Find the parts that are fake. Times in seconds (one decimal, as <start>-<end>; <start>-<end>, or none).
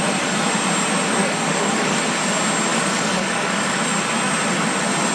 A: 1.2-2.0; 2.7-3.8